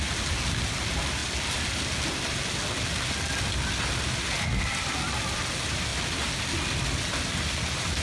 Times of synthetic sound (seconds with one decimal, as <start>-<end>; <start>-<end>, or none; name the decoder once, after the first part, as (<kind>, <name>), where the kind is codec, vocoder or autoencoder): none

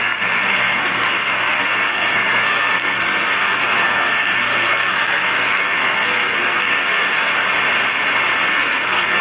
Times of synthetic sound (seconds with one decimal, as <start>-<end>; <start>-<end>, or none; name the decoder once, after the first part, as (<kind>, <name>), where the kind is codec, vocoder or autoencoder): 0.0-7.3 (codec, SNAC); 8.5-9.2

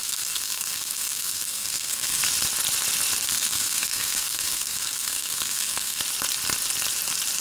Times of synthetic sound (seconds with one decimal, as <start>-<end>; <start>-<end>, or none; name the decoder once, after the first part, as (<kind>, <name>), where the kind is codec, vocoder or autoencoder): 0.0-2.2 (codec, SNAC); 3.3-6.0

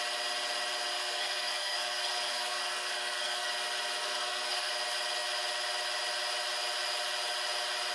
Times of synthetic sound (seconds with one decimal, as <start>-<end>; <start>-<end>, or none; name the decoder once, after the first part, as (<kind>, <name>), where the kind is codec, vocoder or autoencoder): 0.9-3.5 (codec, SNAC); 4.0-4.7

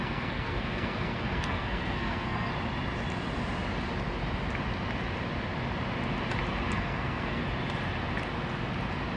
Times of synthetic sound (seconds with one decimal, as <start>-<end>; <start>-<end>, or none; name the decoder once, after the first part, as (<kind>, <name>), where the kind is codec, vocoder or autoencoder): 0.0-2.5 (codec, SNAC); 6.7-7.4

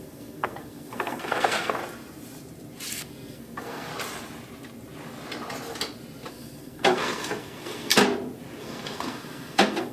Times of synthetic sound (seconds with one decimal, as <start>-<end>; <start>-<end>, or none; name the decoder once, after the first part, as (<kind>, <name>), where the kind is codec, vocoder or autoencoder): 0.0-1.8 (codec, SNAC); 2.9-3.9; 6.3-7.9; 8.6-9.9

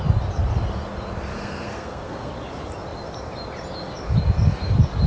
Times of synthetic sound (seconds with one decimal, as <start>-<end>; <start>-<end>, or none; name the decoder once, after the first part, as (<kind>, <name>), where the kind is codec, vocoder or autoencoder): 1.3-2.3 (codec, SNAC)

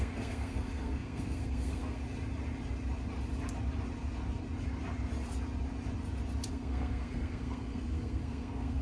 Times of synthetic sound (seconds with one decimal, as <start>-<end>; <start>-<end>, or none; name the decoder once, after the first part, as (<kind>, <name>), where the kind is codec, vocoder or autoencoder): 0.0-2.0 (codec, SNAC); 6.5-8.8